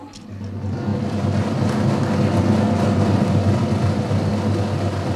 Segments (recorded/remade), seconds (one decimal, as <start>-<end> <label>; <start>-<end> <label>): 0.0-5.2 recorded